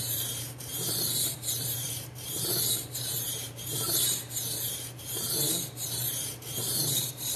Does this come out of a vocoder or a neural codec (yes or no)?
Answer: yes